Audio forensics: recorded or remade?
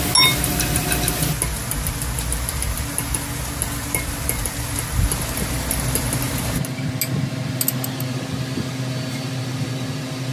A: recorded